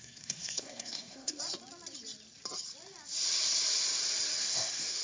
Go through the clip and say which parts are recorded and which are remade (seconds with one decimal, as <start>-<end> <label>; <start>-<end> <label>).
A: 0.0-1.4 remade; 1.4-4.4 recorded; 4.4-5.0 remade